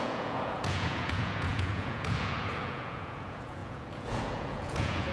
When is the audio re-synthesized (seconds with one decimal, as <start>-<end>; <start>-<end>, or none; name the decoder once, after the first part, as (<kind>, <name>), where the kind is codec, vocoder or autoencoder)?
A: 0.0-5.1 (vocoder, Vocos)